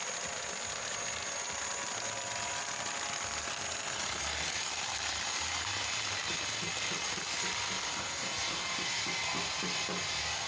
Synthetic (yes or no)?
no